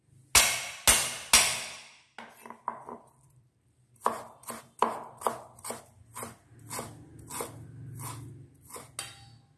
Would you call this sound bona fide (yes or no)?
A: yes